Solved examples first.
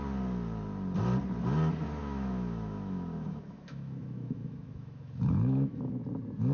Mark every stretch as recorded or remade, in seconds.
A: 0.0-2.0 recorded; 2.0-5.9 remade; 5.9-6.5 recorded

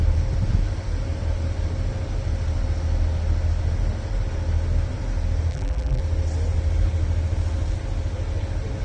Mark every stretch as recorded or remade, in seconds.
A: 0.0-5.5 recorded; 5.5-6.0 remade; 6.0-8.8 recorded

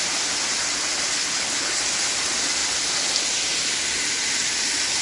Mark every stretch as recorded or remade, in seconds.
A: 0.0-1.2 recorded; 1.2-1.8 remade; 1.8-5.0 recorded

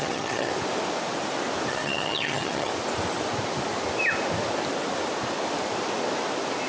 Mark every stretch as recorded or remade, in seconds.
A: 0.0-0.5 remade; 0.5-1.7 recorded; 1.7-2.7 remade; 2.7-6.7 recorded

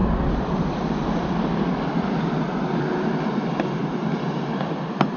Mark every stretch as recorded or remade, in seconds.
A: 0.0-3.1 remade; 3.1-3.8 recorded; 3.8-5.2 remade

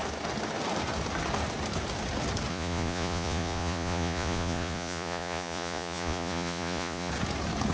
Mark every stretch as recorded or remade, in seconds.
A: 0.0-2.5 recorded; 2.5-7.1 remade; 7.1-7.7 recorded